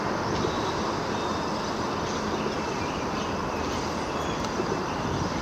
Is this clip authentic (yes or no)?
yes